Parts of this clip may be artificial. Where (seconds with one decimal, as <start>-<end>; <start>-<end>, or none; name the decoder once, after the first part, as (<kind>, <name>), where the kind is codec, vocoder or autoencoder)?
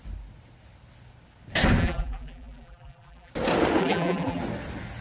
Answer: 1.8-3.3 (vocoder, BigVGAN v2); 3.8-4.4